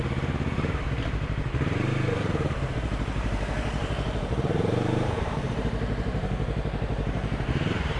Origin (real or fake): fake